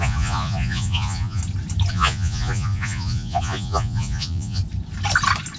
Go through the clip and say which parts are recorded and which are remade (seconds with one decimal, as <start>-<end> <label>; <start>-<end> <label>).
0.0-1.4 remade; 1.4-1.9 recorded; 1.9-4.6 remade; 4.6-5.6 recorded